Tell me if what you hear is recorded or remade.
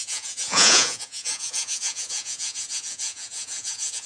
remade